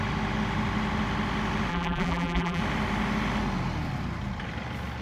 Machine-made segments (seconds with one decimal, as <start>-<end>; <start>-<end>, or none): 1.7-2.6